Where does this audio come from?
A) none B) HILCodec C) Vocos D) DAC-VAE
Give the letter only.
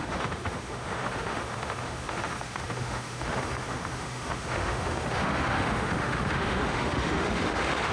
D